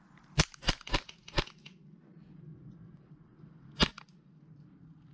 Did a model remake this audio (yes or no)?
no